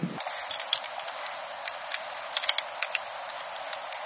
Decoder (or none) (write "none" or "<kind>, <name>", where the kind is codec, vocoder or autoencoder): none